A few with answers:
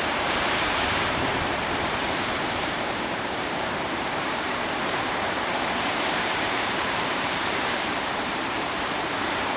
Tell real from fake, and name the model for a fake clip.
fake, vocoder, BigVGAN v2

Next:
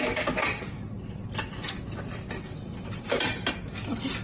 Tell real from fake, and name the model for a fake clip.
real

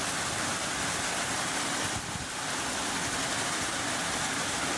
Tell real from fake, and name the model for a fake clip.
real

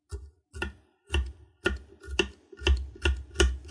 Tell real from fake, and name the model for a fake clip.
real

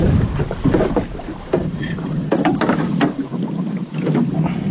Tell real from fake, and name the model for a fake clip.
fake, vocoder, BigVGAN v2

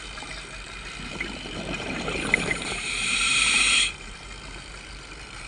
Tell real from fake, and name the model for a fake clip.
fake, vocoder, BigVGAN v2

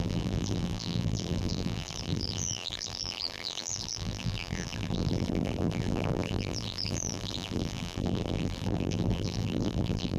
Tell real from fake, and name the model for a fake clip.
fake, vocoder, BigVGAN v2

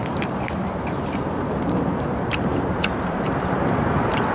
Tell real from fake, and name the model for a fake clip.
fake, vocoder, BigVGAN v2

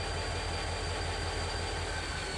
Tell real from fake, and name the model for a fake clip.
real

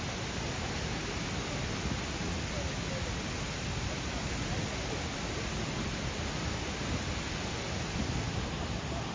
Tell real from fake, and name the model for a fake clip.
real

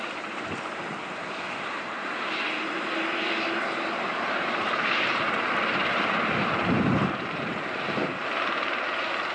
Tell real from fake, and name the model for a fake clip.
fake, vocoder, BigVGAN v2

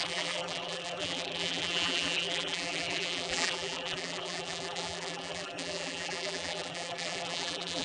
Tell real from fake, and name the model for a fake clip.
fake, vocoder, BigVGAN v2